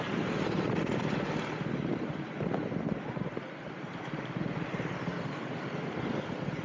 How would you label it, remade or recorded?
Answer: recorded